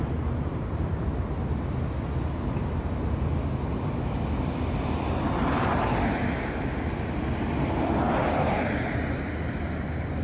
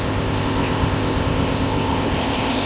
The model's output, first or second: second